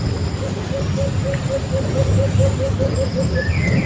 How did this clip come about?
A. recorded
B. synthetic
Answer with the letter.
A